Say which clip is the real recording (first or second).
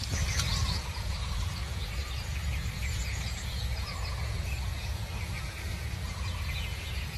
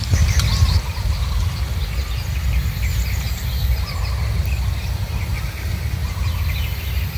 second